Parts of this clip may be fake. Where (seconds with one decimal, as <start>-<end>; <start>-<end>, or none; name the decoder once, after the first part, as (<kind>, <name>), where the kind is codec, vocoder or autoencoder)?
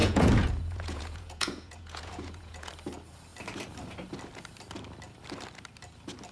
0.0-2.7 (vocoder, Vocos)